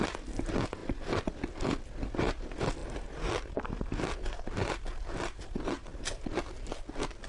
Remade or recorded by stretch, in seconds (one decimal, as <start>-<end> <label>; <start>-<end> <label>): 0.0-0.8 recorded; 0.8-1.8 remade; 1.8-7.3 recorded